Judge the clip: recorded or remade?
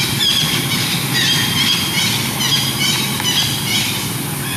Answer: recorded